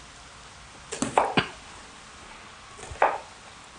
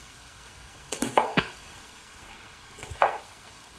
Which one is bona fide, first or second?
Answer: first